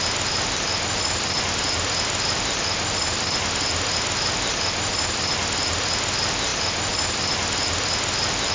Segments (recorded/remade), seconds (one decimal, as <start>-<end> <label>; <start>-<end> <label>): 0.0-8.5 recorded